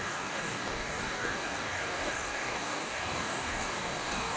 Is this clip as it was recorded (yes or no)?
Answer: no